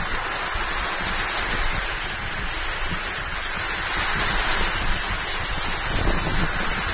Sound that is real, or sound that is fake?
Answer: real